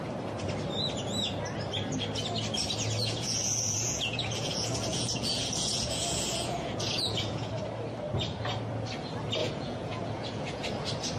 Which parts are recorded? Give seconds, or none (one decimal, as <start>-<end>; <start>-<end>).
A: 0.0-3.0; 7.5-9.4; 10.6-11.2